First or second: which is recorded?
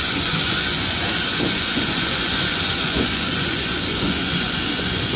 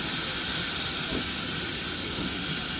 second